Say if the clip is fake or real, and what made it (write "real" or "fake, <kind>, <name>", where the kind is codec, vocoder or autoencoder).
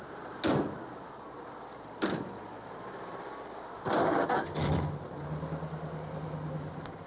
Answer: real